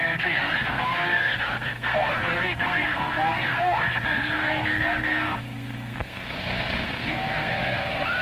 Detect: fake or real fake